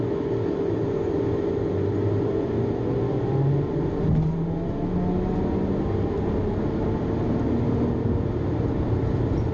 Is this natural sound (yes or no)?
yes